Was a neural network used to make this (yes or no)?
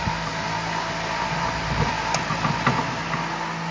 no